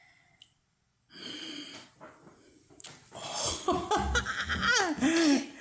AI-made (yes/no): no